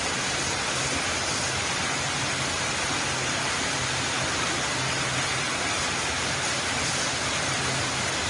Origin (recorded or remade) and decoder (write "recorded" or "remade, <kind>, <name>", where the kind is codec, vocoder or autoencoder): recorded